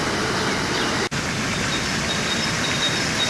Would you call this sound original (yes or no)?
yes